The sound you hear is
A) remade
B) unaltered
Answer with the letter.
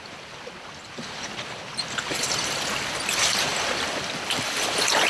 B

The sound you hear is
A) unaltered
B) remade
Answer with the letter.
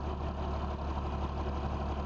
A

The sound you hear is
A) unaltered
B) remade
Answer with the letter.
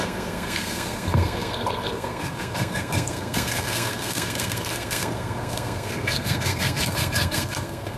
B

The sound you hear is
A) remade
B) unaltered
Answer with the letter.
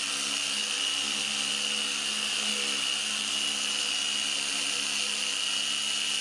B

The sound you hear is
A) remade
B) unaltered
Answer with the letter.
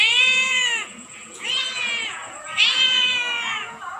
A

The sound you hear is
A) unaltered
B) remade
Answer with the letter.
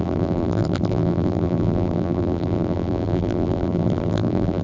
B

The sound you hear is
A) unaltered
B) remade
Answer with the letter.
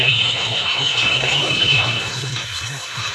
B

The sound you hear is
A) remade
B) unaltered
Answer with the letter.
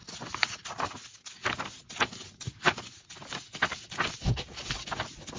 B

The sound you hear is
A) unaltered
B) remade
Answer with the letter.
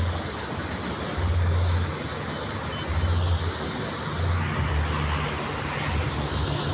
A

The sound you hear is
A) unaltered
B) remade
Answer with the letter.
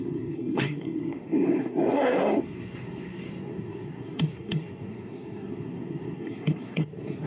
B